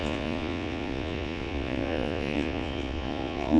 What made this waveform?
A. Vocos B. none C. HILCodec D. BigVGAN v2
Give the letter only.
A